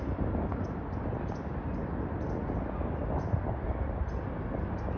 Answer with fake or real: real